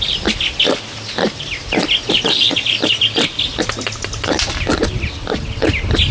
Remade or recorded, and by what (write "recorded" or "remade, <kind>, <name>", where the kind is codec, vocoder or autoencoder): recorded